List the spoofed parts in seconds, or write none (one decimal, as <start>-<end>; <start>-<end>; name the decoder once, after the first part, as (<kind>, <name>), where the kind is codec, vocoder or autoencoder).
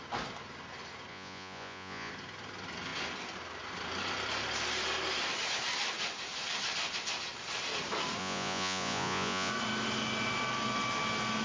1.1-2.1 (vocoder, Vocos); 8.2-9.5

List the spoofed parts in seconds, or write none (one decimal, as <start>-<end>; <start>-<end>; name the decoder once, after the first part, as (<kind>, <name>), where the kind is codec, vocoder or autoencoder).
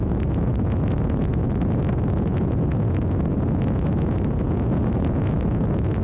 0.0-6.0 (vocoder, Vocos)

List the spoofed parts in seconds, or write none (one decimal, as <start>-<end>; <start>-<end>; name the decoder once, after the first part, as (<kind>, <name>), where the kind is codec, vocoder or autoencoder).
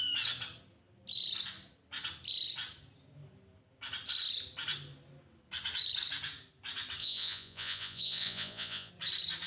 7.0-8.9 (vocoder, Vocos)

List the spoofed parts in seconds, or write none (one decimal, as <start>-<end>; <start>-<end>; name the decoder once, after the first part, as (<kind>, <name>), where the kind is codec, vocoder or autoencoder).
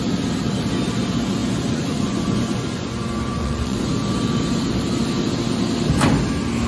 1.4-3.9 (vocoder, Vocos)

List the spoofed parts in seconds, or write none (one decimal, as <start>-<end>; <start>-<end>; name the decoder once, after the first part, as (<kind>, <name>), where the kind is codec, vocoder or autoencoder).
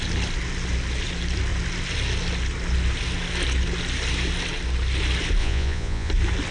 5.4-6.1 (vocoder, Vocos)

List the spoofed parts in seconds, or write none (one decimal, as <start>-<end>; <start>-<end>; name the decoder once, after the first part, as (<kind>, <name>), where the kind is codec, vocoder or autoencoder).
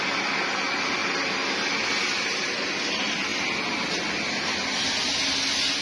none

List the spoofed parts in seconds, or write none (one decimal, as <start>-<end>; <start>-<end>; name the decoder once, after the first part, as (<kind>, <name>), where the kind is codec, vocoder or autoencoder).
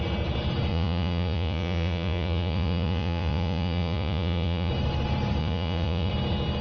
0.7-4.7 (vocoder, Vocos); 5.4-6.1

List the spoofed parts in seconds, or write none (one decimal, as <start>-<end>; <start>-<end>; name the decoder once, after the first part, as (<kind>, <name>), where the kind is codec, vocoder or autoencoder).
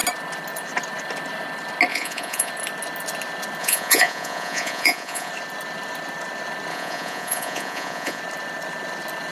1.9-2.5 (vocoder, Vocos); 3.6-5.3; 6.7-8.2